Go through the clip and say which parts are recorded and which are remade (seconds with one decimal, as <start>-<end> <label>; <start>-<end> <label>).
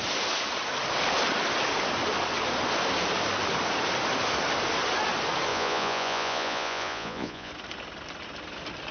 0.0-5.5 recorded; 5.5-7.5 remade; 7.5-8.9 recorded